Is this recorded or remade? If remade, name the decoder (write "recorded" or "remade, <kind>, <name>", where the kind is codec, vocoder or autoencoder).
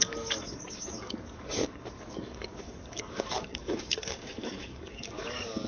remade, codec, DAC